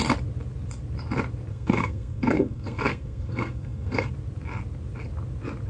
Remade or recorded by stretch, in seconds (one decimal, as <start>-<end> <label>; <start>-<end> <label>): 0.0-1.5 recorded; 1.5-4.1 remade; 4.1-5.7 recorded